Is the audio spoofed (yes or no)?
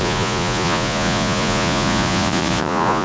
yes